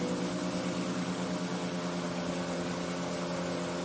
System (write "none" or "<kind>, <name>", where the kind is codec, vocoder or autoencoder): none